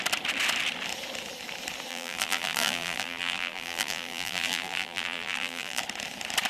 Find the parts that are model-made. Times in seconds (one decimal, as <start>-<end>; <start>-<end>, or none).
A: 1.9-5.8